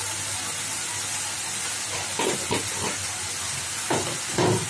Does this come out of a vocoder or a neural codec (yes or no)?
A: no